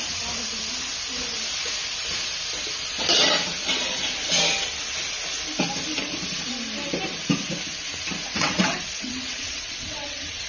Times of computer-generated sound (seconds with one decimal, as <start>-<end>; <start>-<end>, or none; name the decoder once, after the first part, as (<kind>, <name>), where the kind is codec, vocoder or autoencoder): 8.3-10.5 (vocoder, WaveNeXt)